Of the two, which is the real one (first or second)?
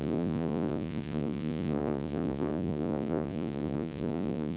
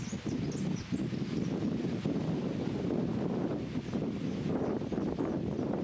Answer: second